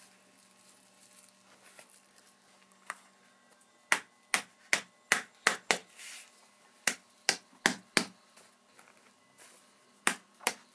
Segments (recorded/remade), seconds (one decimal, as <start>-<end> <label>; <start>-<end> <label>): 0.0-10.7 recorded